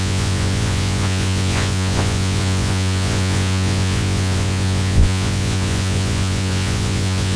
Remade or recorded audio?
remade